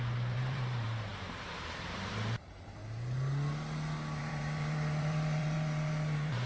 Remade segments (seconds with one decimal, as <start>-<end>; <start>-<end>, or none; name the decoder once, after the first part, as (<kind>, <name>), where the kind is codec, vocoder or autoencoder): 0.0-2.8 (vocoder, BigVGAN v2); 4.2-6.5

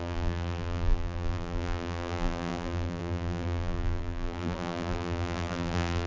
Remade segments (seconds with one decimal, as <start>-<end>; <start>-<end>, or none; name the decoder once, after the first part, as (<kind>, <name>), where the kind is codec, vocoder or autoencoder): 0.0-6.1 (vocoder, BigVGAN v2)

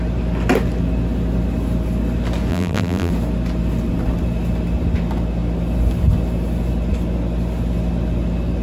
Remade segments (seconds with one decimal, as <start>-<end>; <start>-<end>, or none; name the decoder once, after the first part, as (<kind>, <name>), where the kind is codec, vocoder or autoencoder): 2.5-3.1 (vocoder, BigVGAN v2)

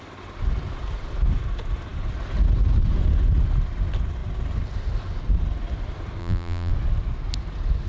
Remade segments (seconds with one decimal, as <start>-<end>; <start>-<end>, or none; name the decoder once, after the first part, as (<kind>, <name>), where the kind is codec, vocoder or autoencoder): 6.2-6.7 (vocoder, BigVGAN v2)

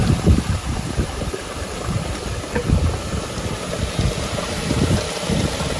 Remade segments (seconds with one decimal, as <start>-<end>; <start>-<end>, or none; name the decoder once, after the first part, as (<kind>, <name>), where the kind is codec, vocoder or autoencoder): 0.0-2.6 (vocoder, BigVGAN v2); 4.4-5.8